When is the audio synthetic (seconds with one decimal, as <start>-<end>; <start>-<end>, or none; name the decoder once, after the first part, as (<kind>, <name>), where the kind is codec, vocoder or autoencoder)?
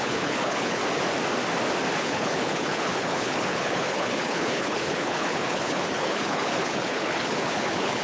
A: 0.0-0.8 (codec, HILCodec); 2.0-8.0